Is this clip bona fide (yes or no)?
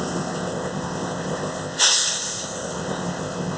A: no